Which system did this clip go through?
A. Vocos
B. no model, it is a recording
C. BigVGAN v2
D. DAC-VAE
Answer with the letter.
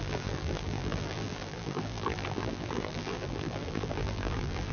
C